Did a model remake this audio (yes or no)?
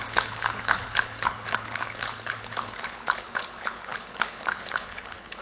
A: yes